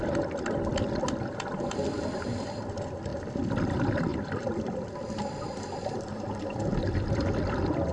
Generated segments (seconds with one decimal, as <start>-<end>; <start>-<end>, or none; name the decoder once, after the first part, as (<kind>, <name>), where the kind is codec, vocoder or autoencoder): 0.0-3.1 (vocoder, BigVGAN v2); 3.6-7.9